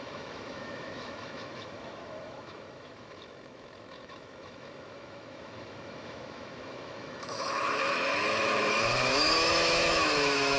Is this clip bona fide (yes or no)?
no